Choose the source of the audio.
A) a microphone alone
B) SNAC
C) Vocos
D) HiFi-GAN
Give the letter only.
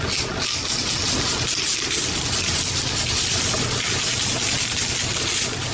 A